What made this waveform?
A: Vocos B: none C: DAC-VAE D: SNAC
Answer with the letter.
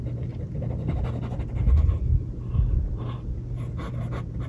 B